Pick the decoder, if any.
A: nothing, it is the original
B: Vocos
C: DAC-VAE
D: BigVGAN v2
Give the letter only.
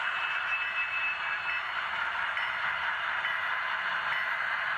A